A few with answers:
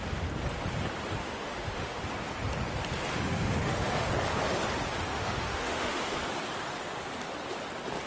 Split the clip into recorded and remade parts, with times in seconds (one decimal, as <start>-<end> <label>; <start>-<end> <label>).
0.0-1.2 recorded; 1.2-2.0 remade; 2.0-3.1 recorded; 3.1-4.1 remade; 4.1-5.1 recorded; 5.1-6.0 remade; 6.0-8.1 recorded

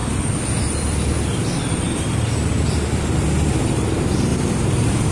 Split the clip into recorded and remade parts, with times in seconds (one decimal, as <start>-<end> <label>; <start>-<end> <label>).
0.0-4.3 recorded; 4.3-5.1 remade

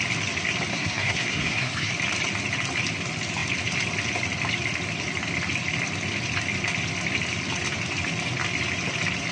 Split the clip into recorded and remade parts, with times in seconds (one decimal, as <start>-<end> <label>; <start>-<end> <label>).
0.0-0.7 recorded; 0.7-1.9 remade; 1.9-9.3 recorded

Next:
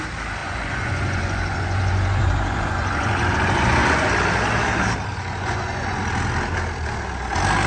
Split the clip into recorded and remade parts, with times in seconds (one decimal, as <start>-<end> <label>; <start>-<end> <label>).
0.0-0.4 recorded; 0.4-4.1 remade; 4.1-5.1 recorded; 5.1-6.0 remade; 6.0-7.7 recorded

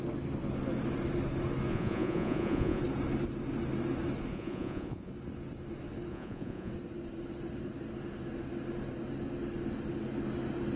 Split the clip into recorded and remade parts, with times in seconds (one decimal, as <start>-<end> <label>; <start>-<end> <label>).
0.0-1.7 recorded; 1.7-2.8 remade; 2.8-4.3 recorded; 4.3-5.1 remade; 5.1-6.1 recorded; 6.1-6.7 remade; 6.7-10.8 recorded

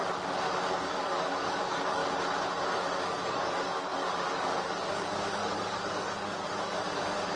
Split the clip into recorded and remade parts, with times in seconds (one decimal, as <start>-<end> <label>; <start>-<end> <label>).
0.0-0.8 recorded; 0.8-2.0 remade; 2.0-3.0 recorded; 3.0-7.4 remade

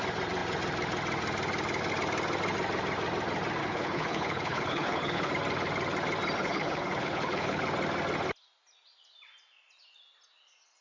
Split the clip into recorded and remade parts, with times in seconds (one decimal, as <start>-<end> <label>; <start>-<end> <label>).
0.0-3.6 recorded; 3.6-5.3 remade; 5.3-6.4 recorded; 6.4-7.6 remade; 7.6-10.8 recorded

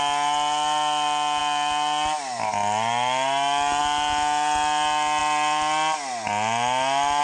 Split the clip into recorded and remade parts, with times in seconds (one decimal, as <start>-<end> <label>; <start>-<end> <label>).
0.0-7.2 recorded